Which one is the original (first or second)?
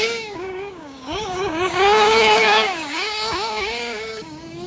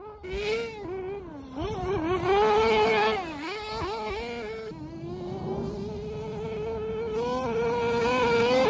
second